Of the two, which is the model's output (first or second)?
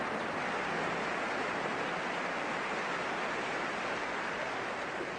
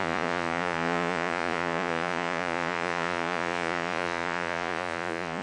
second